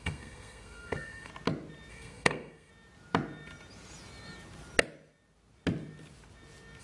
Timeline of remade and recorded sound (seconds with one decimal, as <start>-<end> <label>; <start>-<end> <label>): 0.0-1.3 remade; 1.3-1.9 recorded; 1.9-2.7 remade; 2.7-6.8 recorded